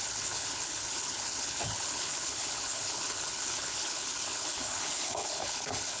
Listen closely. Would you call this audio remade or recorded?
remade